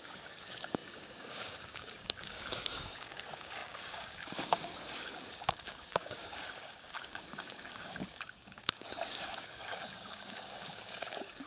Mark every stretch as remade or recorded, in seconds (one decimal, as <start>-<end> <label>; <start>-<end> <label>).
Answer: 0.0-11.5 remade